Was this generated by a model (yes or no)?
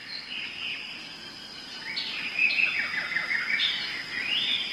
no